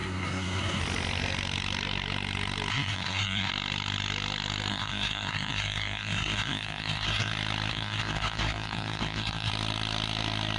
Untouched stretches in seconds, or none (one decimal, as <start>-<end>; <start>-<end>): 0.8-2.7; 3.5-4.7; 7.3-7.7; 9.5-10.6